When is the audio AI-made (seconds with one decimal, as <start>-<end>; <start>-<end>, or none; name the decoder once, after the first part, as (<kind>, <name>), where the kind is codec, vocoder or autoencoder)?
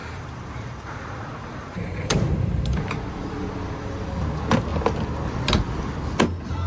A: 0.0-4.0 (vocoder, BigVGAN v2)